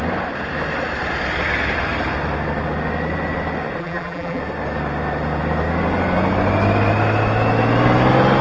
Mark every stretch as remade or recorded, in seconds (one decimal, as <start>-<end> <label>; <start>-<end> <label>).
0.0-3.8 recorded; 3.8-4.4 remade; 4.4-8.4 recorded